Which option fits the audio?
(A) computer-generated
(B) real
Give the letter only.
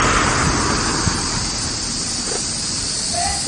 B